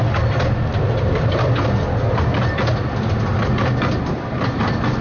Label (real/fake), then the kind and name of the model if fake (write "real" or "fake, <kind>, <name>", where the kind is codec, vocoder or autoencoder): real